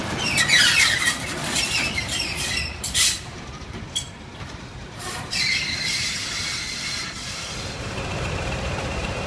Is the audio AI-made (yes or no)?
yes